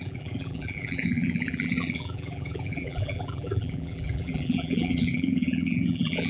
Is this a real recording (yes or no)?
no